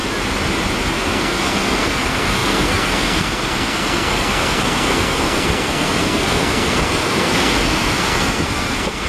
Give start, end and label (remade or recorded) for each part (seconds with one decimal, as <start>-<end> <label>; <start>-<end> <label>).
0.0-0.9 recorded; 0.9-9.1 remade